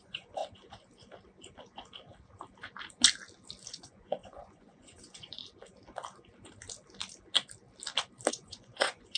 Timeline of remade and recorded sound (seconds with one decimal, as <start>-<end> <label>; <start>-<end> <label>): 0.0-0.4 remade; 0.4-3.7 recorded; 3.7-5.4 remade; 5.4-8.3 recorded; 8.3-9.2 remade

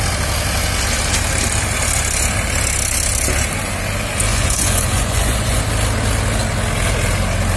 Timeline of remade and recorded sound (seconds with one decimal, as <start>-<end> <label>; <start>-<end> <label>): 0.0-4.3 recorded; 4.3-5.6 remade; 5.6-7.6 recorded

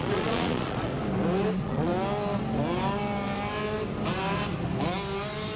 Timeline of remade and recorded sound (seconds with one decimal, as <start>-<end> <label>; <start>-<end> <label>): 0.0-0.9 remade; 0.9-1.5 recorded; 1.5-1.9 remade; 1.9-5.6 recorded

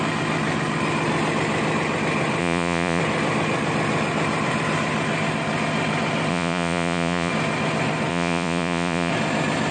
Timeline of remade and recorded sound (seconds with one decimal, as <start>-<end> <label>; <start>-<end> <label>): 0.0-2.4 recorded; 2.4-3.0 remade; 3.0-6.3 recorded; 6.3-7.3 remade; 7.3-8.1 recorded; 8.1-9.1 remade; 9.1-9.7 recorded

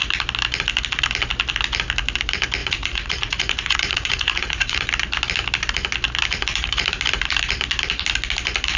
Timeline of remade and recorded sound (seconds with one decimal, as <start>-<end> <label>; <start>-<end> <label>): 0.0-2.6 recorded; 2.6-4.9 remade; 4.9-6.5 recorded; 6.5-7.0 remade; 7.0-8.8 recorded

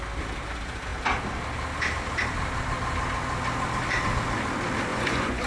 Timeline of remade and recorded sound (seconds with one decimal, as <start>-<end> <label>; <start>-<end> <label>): 0.0-4.9 recorded; 4.9-5.5 remade